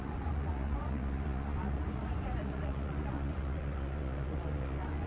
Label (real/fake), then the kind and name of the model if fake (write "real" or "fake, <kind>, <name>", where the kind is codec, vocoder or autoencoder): fake, vocoder, Vocos